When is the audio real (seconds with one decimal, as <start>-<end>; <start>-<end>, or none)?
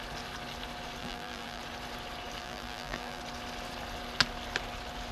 0.0-1.0; 1.6-2.4; 3.2-5.1